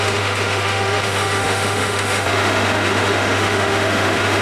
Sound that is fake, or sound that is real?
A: fake